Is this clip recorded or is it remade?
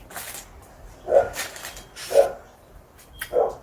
recorded